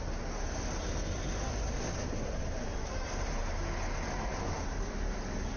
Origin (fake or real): real